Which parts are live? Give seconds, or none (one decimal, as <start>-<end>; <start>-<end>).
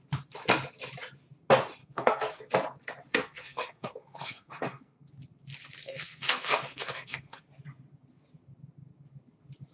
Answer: 0.0-1.8; 2.5-3.1; 5.1-5.8; 7.4-9.7